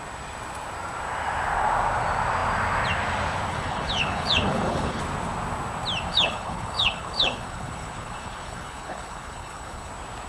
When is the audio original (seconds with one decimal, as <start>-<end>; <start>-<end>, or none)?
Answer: 0.0-3.5; 5.0-6.1; 9.9-10.3